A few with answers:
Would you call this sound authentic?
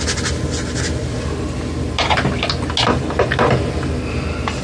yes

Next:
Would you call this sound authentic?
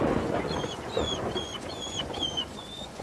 no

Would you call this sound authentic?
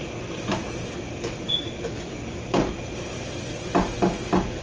yes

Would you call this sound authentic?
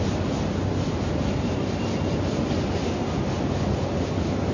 yes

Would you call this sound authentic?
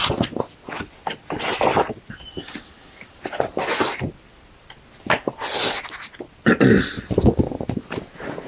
yes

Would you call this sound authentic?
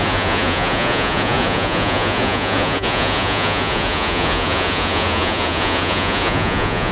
no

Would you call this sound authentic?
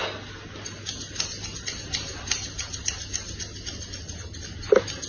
yes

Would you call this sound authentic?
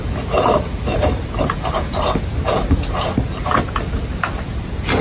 yes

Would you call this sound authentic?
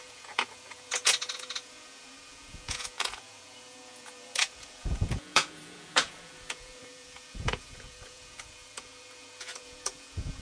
no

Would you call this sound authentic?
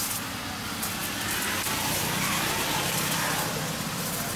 yes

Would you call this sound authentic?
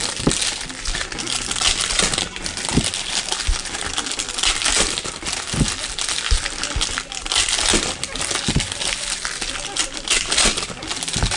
yes